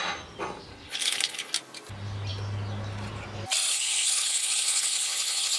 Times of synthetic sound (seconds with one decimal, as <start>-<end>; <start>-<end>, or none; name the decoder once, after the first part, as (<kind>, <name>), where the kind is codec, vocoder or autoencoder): 0.7-1.5 (codec, HILCodec); 3.7-5.6